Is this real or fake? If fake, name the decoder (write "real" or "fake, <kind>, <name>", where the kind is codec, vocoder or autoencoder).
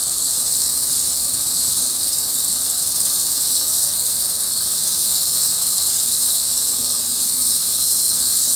fake, codec, SNAC